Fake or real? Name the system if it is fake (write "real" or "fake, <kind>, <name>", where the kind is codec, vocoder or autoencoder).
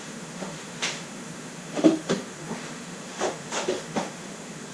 fake, autoencoder, DAC-VAE